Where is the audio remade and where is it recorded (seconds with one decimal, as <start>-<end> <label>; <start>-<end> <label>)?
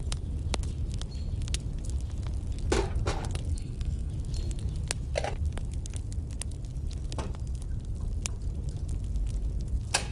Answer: 0.0-3.5 recorded; 3.5-4.1 remade; 4.1-10.1 recorded